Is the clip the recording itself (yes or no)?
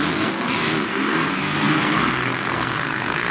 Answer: no